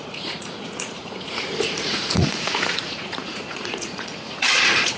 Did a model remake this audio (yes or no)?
yes